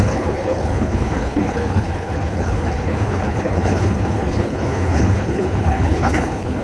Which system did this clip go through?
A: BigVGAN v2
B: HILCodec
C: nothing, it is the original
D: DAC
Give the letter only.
B